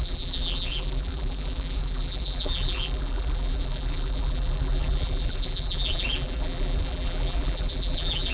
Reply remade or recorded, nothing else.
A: remade